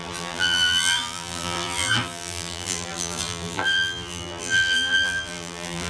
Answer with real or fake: fake